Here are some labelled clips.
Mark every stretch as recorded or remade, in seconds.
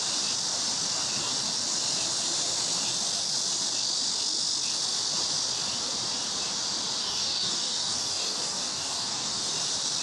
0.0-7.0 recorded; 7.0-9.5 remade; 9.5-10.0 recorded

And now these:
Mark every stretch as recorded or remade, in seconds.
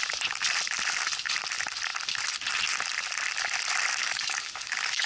0.0-4.0 recorded; 4.0-5.1 remade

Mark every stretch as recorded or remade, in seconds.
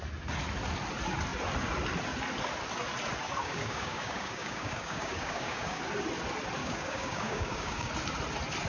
0.0-3.4 recorded; 3.4-5.8 remade; 5.8-6.6 recorded; 6.6-7.9 remade; 7.9-8.7 recorded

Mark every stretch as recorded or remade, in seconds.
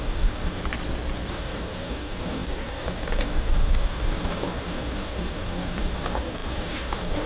0.0-0.6 remade; 0.6-1.3 recorded; 1.3-7.3 remade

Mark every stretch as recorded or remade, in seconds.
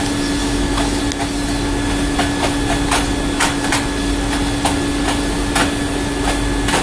0.0-0.4 recorded; 0.4-1.0 remade; 1.0-6.8 recorded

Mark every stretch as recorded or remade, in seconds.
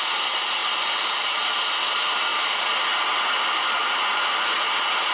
0.0-5.1 recorded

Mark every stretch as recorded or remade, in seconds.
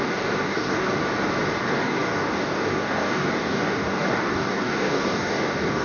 0.0-1.0 remade; 1.0-1.6 recorded; 1.6-5.8 remade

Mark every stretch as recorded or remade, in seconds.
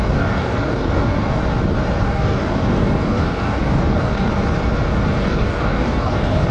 0.0-1.4 remade; 1.4-2.0 recorded; 2.0-4.3 remade; 4.3-5.2 recorded; 5.2-6.5 remade